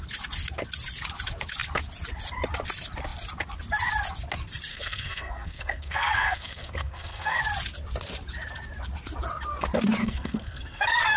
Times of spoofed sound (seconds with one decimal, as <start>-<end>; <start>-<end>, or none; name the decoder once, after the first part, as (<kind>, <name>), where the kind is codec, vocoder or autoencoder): 4.7-7.4 (codec, SNAC); 10.0-11.2